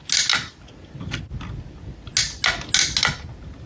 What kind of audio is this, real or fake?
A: real